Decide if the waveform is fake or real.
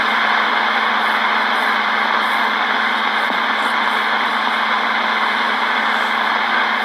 fake